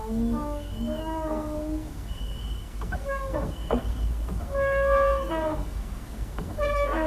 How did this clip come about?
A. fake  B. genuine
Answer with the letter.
A